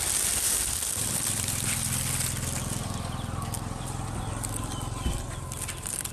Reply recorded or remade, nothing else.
recorded